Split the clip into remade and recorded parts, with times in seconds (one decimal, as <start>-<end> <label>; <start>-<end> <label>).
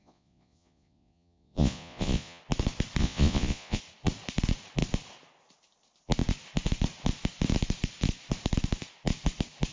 0.0-2.4 remade; 2.4-3.0 recorded; 3.0-3.8 remade; 3.8-9.7 recorded